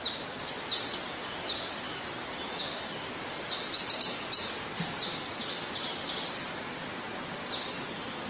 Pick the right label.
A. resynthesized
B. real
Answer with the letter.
B